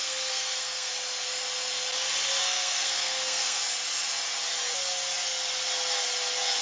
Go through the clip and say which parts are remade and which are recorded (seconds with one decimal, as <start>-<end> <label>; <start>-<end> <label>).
0.0-0.9 remade; 0.9-2.4 recorded; 2.4-3.6 remade; 3.6-6.6 recorded